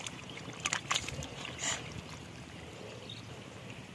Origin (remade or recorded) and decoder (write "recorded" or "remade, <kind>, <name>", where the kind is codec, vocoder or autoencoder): recorded